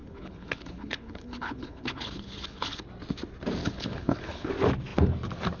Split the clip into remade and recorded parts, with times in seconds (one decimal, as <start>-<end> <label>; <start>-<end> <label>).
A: 0.0-2.8 remade; 2.8-3.6 recorded; 3.6-4.5 remade; 4.5-5.6 recorded